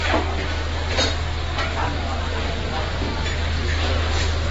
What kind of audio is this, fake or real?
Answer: real